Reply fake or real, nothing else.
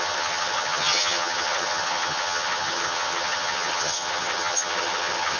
fake